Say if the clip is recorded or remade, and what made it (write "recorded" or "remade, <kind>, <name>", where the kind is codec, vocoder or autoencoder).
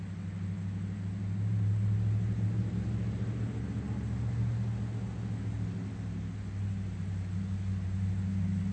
recorded